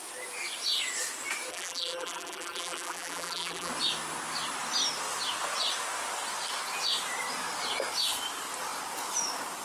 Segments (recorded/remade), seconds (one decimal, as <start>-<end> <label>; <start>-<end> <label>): 0.0-1.5 recorded; 1.5-3.7 remade; 3.7-9.6 recorded